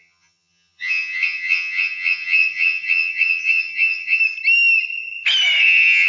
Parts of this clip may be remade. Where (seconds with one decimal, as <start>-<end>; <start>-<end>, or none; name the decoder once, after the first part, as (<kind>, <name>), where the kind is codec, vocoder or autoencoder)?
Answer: 0.0-4.2 (vocoder, HiFi-GAN); 5.6-6.1